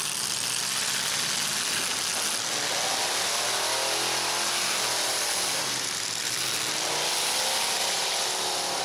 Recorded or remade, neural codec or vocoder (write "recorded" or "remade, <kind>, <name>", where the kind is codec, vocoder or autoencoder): recorded